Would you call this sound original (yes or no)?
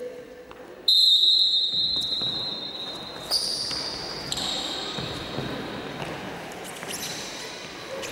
yes